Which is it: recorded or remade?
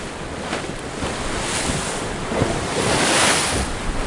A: recorded